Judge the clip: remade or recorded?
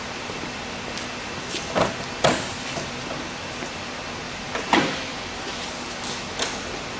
recorded